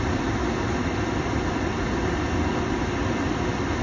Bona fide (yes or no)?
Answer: yes